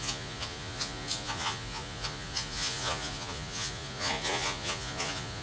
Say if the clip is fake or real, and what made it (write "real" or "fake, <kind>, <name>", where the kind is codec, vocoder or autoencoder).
fake, vocoder, Vocos